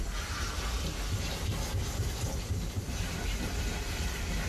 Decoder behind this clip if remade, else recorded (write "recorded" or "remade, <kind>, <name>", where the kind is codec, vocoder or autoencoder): recorded